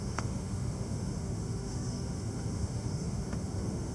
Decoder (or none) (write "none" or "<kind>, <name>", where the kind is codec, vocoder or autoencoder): autoencoder, DAC-VAE